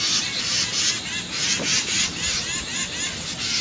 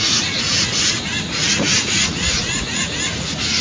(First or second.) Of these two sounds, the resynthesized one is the second